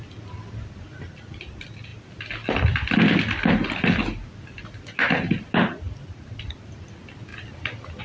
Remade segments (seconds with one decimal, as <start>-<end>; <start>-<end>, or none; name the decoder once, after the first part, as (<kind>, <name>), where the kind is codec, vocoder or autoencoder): none

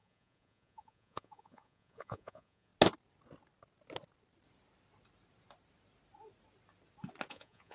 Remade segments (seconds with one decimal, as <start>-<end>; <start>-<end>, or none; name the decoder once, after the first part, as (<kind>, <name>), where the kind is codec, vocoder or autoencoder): 0.0-2.7 (vocoder, Vocos); 7.3-7.7

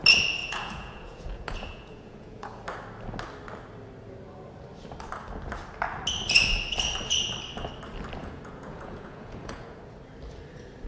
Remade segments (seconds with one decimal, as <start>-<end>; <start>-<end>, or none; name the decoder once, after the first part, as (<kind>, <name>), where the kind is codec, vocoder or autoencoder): 0.4-2.6 (vocoder, Vocos); 8.2-9.8

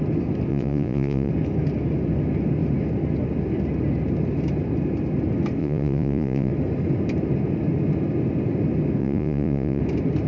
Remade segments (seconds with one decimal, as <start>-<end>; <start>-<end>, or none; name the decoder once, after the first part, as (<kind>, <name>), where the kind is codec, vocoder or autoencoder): 0.5-1.3 (vocoder, Vocos); 5.6-6.5; 9.0-9.8

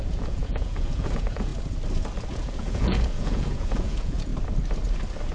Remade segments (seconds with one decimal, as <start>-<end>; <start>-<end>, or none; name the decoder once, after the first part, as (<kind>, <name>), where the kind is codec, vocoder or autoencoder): 0.0-1.5 (vocoder, Vocos); 2.3-4.3